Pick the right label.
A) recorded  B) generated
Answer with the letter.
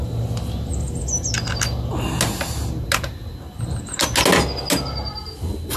A